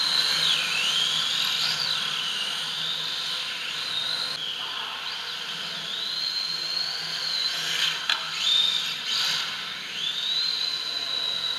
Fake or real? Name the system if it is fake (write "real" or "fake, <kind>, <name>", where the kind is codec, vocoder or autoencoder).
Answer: real